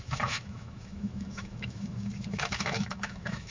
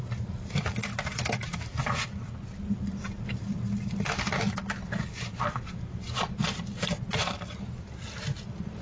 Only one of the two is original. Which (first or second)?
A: second